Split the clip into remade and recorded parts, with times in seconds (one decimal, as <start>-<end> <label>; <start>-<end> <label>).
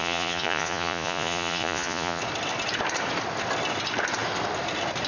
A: 0.0-2.2 remade; 2.2-5.1 recorded